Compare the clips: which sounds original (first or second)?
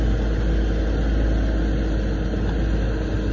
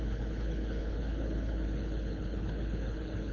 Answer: first